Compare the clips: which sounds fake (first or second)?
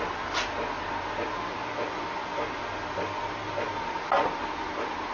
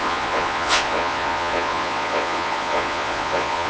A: second